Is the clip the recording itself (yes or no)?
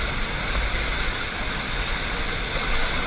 yes